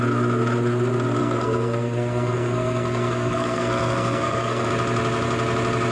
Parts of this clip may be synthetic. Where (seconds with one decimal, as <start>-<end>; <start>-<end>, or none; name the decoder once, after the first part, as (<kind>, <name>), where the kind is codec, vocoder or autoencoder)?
1.2-4.7 (codec, SNAC)